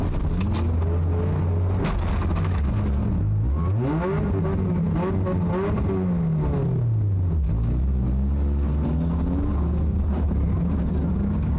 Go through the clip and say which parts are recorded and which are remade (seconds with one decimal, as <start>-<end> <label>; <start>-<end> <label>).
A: 0.0-9.9 recorded; 9.9-10.9 remade; 10.9-11.6 recorded